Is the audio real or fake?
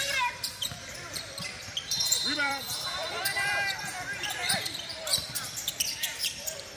fake